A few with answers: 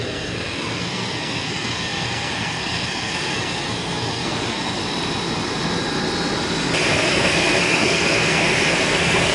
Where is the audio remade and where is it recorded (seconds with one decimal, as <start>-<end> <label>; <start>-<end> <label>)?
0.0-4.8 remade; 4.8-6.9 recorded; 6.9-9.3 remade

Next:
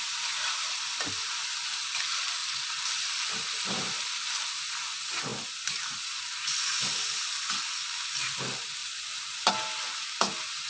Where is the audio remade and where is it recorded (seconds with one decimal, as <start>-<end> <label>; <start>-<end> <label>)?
0.0-2.4 recorded; 2.4-4.7 remade; 4.7-8.8 recorded; 8.8-9.5 remade; 9.5-10.7 recorded

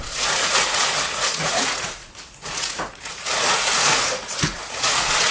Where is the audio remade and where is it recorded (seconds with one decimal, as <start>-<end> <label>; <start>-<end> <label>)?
0.0-5.3 remade

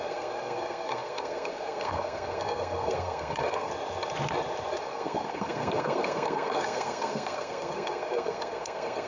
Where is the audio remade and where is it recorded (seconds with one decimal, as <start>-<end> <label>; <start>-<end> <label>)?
0.0-3.7 remade; 3.7-4.8 recorded; 4.8-9.1 remade